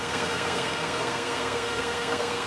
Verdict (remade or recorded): remade